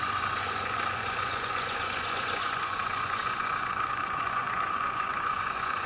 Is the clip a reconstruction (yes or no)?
yes